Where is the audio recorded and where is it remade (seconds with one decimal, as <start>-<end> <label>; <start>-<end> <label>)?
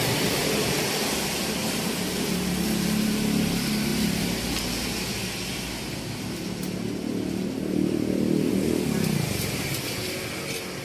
0.0-10.8 recorded